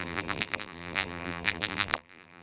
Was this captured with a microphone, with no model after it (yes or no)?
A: no